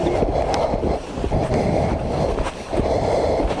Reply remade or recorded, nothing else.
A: remade